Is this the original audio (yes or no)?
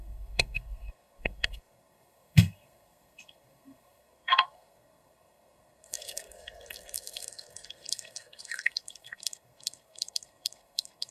no